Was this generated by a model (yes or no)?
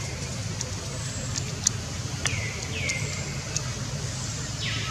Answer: no